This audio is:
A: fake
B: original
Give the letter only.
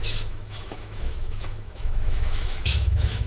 A